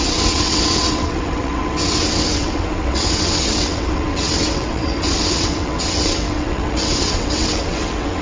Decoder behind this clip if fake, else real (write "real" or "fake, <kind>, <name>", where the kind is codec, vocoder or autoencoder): fake, vocoder, WaveNeXt